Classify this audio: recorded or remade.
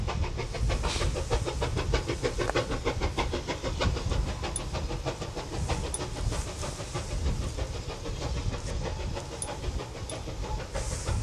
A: recorded